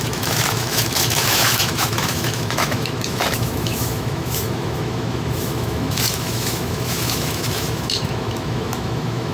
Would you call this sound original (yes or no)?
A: no